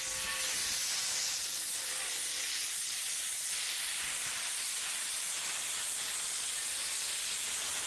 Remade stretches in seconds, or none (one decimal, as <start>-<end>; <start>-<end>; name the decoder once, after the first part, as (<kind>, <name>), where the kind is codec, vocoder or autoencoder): 0.6-2.1 (vocoder, BigVGAN v2); 3.9-5.7; 6.5-7.9